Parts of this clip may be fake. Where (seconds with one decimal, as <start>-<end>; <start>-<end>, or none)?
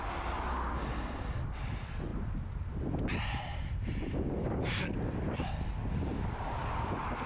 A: 2.1-3.0; 3.5-6.5